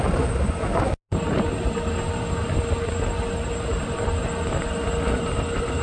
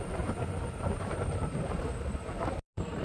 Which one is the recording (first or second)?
first